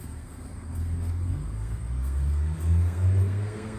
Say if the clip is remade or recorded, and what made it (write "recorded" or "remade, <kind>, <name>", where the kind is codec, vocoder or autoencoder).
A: remade, codec, SNAC